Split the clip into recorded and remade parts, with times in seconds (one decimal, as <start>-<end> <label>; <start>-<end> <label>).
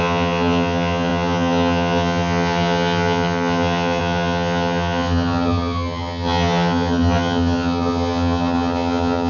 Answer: 0.0-9.3 remade